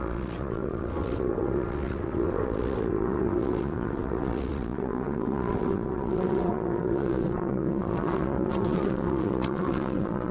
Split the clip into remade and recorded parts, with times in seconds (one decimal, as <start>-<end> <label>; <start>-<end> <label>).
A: 0.0-10.3 remade